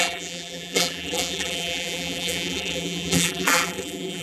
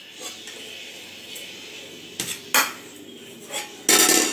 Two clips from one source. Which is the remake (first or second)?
first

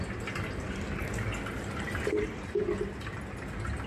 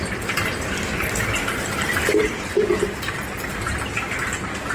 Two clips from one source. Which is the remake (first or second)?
second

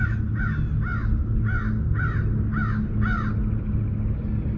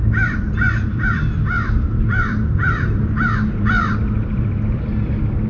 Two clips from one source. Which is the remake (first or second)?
second